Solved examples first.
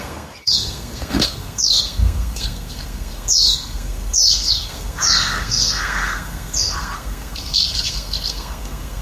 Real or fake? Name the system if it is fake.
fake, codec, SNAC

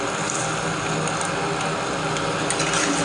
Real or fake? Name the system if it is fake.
real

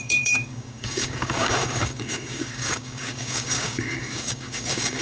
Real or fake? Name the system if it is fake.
fake, codec, DAC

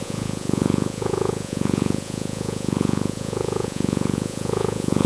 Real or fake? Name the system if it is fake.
fake, vocoder, Vocos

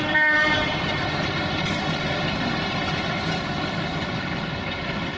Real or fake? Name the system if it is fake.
fake, vocoder, BigVGAN v2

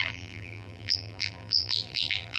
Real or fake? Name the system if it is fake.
fake, vocoder, BigVGAN v2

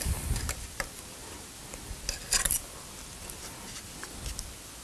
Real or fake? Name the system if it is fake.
real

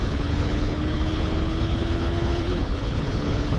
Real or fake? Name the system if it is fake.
fake, codec, HILCodec